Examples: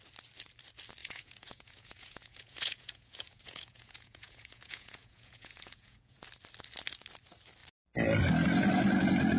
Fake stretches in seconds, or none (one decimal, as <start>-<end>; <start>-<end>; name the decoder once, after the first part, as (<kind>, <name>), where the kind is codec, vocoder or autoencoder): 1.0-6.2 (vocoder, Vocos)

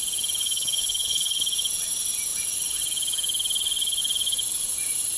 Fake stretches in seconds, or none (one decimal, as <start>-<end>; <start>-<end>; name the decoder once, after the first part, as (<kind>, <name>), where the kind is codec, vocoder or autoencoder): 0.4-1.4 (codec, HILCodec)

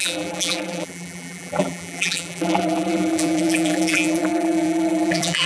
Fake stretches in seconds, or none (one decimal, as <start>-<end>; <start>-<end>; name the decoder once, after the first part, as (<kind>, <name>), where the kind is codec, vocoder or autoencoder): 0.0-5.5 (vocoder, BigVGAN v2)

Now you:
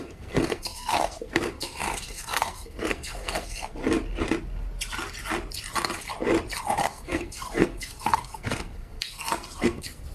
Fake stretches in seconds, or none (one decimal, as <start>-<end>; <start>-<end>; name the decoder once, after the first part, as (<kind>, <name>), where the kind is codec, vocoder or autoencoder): 0.0-3.8 (codec, SNAC); 6.8-10.1